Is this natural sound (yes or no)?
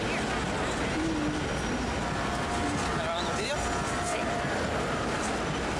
yes